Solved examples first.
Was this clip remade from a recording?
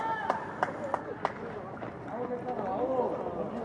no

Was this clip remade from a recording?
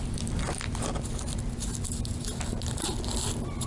no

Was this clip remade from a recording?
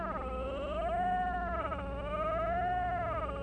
no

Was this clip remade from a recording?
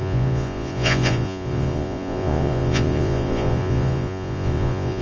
yes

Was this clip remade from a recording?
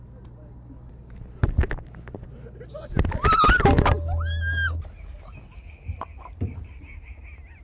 no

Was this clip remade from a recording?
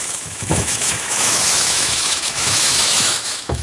yes